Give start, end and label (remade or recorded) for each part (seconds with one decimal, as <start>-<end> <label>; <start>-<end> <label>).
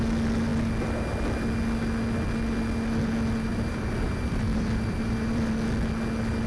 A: 0.0-3.5 recorded; 3.5-5.5 remade; 5.5-6.5 recorded